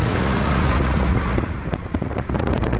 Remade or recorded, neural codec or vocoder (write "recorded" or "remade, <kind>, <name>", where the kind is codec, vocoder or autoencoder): remade, vocoder, Vocos